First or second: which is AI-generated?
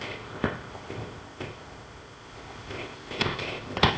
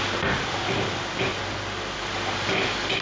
first